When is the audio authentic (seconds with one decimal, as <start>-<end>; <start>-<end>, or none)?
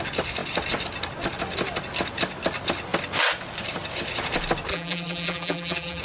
0.0-4.7